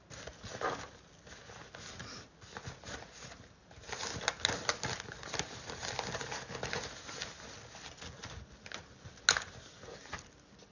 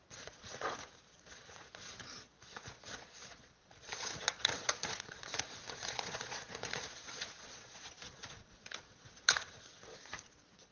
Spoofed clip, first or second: second